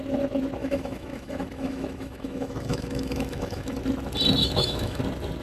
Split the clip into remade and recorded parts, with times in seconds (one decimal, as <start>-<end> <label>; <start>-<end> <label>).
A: 0.0-0.6 recorded; 0.6-3.8 remade; 3.8-4.4 recorded; 4.4-5.0 remade; 5.0-5.4 recorded